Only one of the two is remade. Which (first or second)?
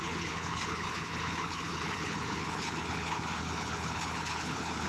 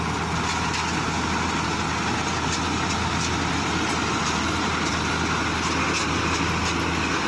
first